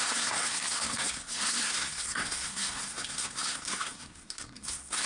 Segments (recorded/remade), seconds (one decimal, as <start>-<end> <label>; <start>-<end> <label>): 0.0-5.1 remade